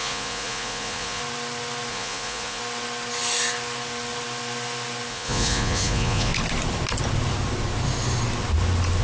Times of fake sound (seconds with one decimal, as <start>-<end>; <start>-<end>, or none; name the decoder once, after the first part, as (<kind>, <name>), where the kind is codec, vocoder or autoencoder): 0.0-1.2 (vocoder, Vocos); 1.9-2.6; 5.1-6.3